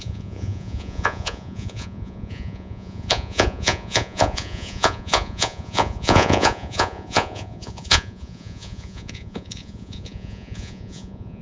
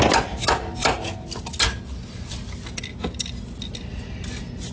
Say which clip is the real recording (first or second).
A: second